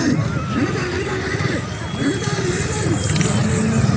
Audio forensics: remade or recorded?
recorded